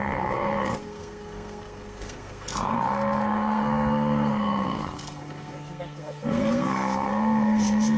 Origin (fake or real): fake